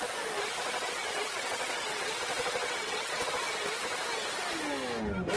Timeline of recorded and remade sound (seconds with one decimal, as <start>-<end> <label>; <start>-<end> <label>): 0.0-1.0 recorded; 1.0-3.3 remade; 3.3-5.4 recorded